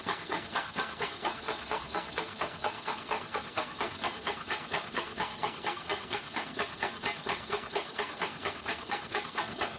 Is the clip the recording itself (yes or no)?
no